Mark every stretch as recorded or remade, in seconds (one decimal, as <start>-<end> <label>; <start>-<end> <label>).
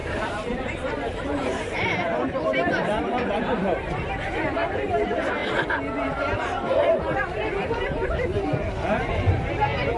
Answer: 0.0-4.3 remade; 4.3-10.0 recorded